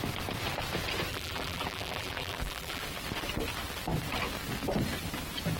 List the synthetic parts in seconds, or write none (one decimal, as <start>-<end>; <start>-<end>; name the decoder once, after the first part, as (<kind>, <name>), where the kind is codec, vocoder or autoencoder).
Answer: 1.1-2.8 (vocoder, BigVGAN v2)